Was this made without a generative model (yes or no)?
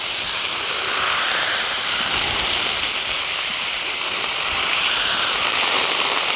no